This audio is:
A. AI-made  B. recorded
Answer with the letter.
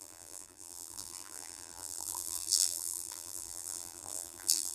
A